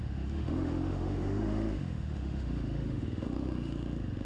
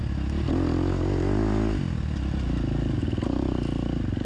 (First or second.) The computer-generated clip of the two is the first